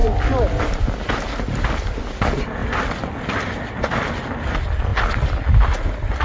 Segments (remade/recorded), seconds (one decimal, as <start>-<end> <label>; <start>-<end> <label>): 0.0-6.2 recorded